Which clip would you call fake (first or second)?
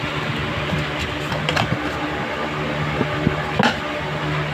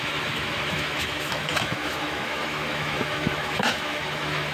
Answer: second